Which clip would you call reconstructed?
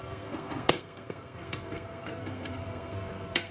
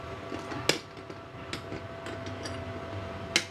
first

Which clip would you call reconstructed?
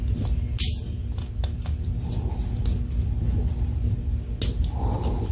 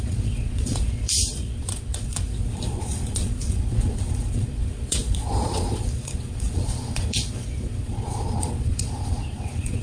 second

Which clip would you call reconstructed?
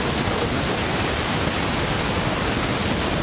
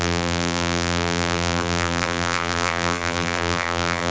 second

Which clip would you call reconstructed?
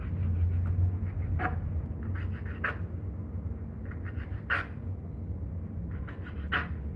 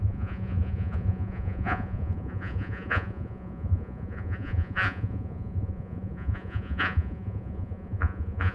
second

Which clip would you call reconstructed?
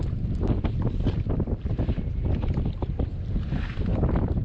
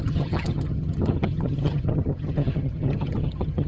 second